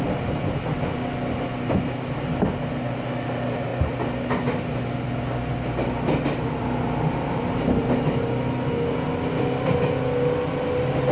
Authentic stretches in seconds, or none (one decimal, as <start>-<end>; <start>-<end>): 0.0-11.1